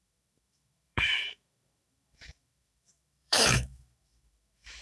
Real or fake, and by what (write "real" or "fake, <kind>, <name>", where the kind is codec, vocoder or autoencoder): fake, autoencoder, DAC-VAE